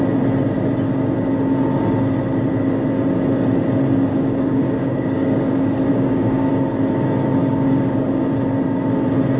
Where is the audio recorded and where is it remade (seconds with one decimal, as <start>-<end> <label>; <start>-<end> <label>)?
0.0-4.1 recorded; 4.1-6.5 remade; 6.5-7.4 recorded; 7.4-8.3 remade; 8.3-9.4 recorded